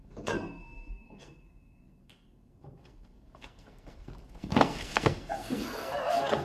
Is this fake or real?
fake